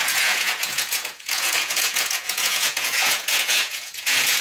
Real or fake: fake